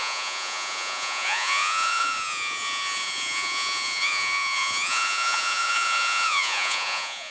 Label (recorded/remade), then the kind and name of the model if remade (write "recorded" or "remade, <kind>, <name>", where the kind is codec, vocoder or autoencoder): remade, vocoder, Vocos